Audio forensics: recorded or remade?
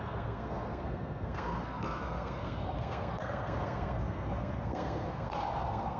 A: remade